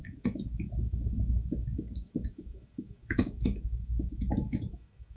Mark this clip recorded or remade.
remade